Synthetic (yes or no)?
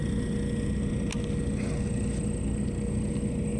no